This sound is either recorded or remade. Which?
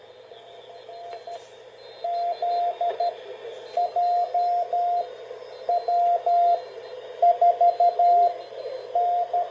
recorded